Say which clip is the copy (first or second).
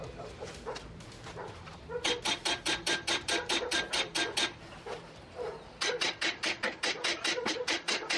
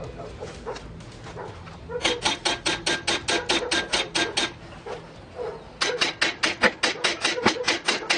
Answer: first